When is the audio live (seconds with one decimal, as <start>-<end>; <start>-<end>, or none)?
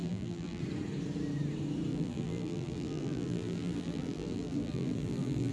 0.6-1.9